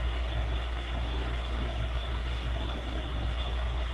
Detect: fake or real fake